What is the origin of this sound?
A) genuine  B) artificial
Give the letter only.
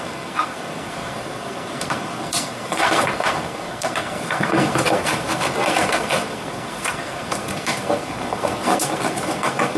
B